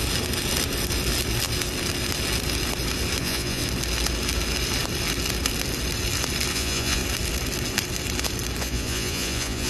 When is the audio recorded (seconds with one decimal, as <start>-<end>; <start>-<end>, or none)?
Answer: 0.0-3.2; 3.6-6.5; 7.0-8.6